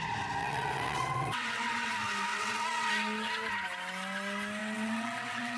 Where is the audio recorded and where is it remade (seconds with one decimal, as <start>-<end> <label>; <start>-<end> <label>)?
0.0-0.4 recorded; 0.4-1.9 remade; 1.9-2.3 recorded; 2.3-2.9 remade; 2.9-4.6 recorded; 4.6-5.6 remade